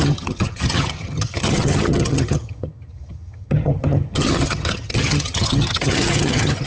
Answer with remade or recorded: remade